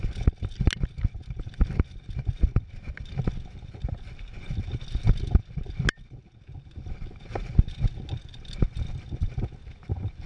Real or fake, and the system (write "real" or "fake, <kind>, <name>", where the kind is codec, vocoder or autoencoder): real